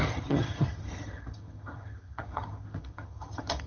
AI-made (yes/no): yes